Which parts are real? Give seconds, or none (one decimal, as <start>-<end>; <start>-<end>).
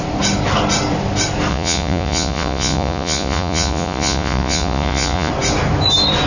0.0-1.5; 5.3-6.3